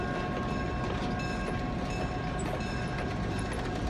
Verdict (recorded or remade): recorded